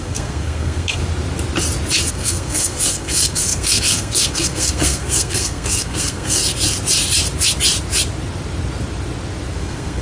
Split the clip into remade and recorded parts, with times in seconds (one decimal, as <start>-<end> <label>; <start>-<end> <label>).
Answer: 0.0-1.0 remade; 1.0-2.1 recorded; 2.1-6.4 remade; 6.4-9.6 recorded; 9.6-10.0 remade